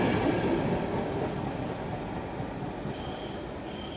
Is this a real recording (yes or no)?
yes